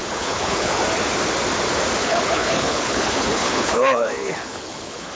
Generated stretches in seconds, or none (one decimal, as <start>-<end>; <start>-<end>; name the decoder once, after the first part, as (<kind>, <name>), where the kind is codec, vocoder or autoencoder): 0.0-0.8 (codec, HILCodec); 2.0-5.1